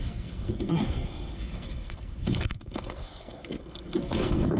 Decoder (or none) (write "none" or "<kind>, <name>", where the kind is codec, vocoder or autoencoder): codec, SNAC